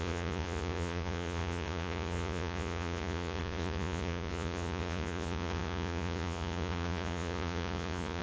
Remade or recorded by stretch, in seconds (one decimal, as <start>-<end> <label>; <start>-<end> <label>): 0.0-8.2 remade